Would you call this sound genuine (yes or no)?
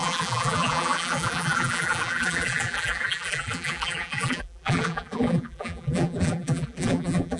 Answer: no